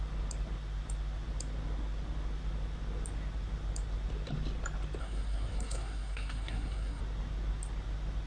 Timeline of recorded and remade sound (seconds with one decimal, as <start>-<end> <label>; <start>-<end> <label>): 0.0-5.0 recorded; 5.0-7.0 remade; 7.0-8.3 recorded